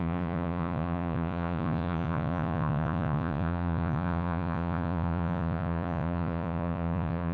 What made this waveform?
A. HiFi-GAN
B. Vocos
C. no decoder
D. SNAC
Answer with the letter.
B